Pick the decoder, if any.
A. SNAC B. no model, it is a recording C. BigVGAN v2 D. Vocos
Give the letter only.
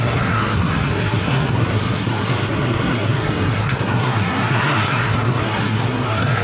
A